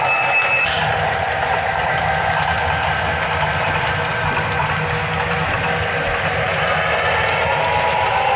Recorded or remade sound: recorded